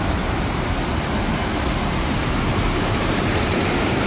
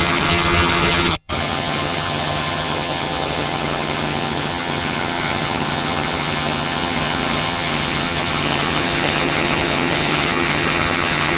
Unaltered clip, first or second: first